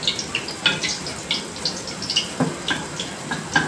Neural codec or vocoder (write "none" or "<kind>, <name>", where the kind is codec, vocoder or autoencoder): none